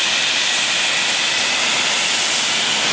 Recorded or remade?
recorded